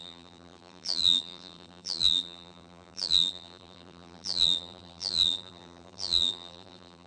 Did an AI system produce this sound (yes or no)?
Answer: yes